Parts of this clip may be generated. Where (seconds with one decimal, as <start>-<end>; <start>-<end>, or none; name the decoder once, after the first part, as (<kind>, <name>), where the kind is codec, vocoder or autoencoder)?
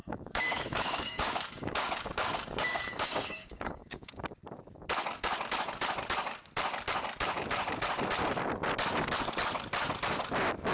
0.0-4.4 (codec, DAC)